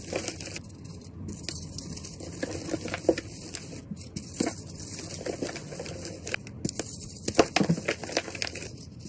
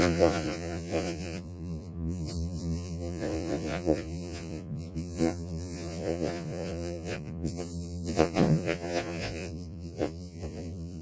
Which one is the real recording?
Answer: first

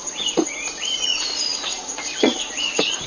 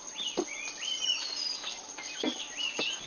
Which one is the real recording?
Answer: second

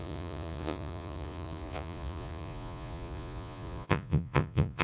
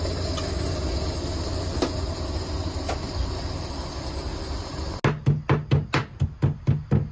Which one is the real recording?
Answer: second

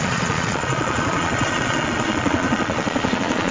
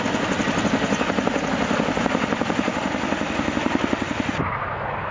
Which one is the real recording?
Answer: second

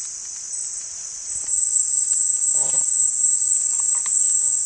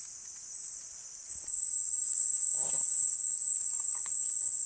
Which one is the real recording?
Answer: first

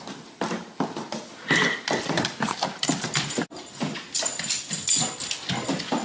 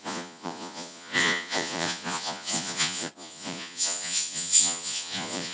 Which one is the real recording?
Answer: first